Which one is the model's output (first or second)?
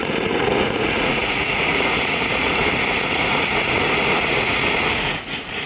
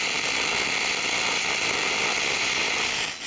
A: first